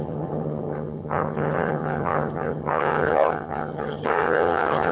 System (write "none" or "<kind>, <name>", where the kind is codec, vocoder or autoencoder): vocoder, HiFi-GAN